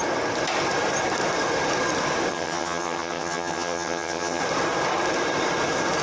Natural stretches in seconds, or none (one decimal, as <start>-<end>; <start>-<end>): 0.0-2.3; 4.4-6.0